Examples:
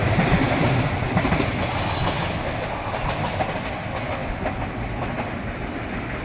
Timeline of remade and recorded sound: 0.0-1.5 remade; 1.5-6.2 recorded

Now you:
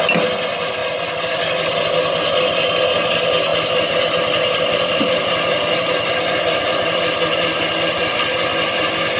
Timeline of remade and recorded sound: 0.0-0.8 recorded; 0.8-1.5 remade; 1.5-3.5 recorded; 3.5-7.0 remade; 7.0-9.2 recorded

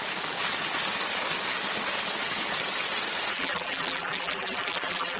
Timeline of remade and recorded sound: 0.0-3.3 recorded; 3.3-5.2 remade

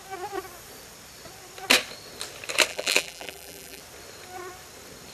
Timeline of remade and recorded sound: 0.0-2.7 recorded; 2.7-3.8 remade; 3.8-5.1 recorded

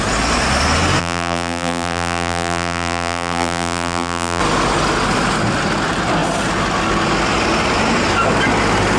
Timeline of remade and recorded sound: 0.0-1.0 recorded; 1.0-4.4 remade; 4.4-9.0 recorded

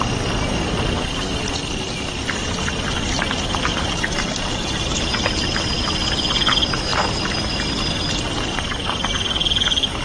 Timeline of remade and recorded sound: 0.0-3.7 recorded; 3.7-5.6 remade; 5.6-6.9 recorded; 6.9-7.7 remade; 7.7-10.0 recorded